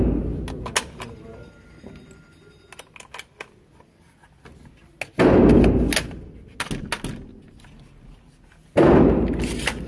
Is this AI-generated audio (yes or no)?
no